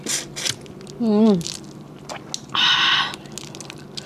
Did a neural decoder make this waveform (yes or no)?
no